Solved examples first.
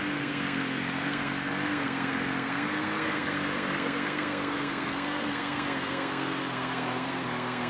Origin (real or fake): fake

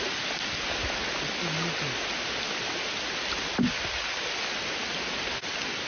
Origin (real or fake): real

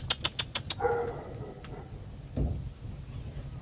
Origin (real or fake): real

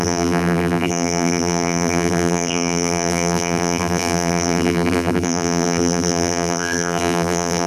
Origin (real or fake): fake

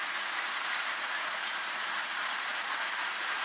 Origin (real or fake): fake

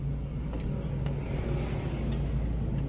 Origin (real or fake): real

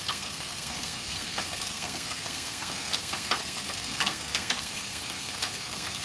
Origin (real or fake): fake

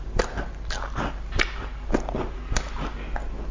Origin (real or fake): real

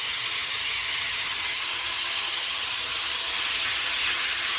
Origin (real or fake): fake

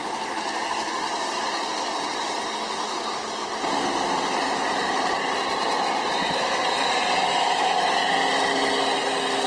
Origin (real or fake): real